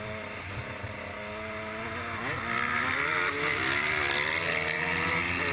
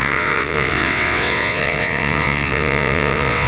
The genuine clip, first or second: first